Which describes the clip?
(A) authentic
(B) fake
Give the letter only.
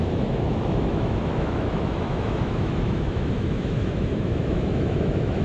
B